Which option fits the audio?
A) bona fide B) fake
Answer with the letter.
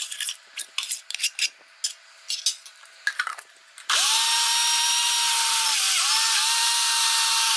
A